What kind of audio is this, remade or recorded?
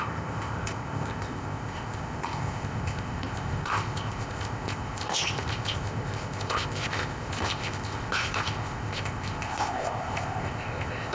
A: remade